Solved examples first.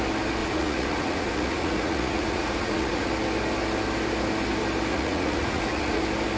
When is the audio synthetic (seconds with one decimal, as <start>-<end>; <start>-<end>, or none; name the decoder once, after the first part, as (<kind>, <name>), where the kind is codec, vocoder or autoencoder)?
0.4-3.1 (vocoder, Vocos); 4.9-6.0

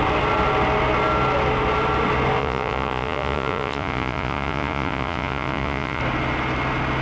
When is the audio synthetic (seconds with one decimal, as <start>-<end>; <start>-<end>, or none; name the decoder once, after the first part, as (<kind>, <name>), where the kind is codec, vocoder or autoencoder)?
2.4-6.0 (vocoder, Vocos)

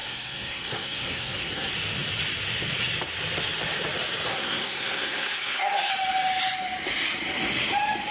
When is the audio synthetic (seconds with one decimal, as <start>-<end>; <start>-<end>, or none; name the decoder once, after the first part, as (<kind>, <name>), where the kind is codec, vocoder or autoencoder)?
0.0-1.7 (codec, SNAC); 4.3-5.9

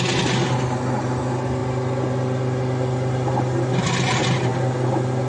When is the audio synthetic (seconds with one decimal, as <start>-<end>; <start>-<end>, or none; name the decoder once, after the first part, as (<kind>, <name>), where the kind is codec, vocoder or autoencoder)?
none

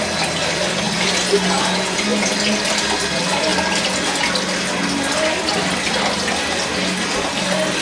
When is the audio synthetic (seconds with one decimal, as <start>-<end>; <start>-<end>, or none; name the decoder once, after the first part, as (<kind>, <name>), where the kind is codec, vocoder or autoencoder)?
none

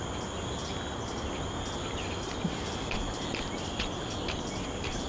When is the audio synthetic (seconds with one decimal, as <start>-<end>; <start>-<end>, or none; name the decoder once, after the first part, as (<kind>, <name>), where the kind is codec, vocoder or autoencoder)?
none

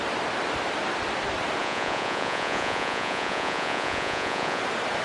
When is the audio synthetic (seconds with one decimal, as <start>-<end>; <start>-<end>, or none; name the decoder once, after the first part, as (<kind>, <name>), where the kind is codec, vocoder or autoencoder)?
1.6-4.6 (vocoder, Vocos)

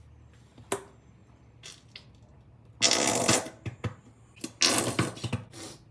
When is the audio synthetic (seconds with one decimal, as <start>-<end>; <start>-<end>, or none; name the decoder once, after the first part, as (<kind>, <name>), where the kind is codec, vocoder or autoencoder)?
none